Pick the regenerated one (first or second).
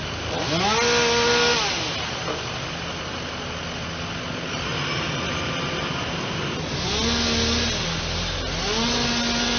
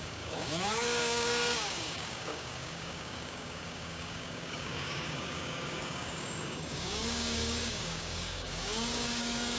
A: second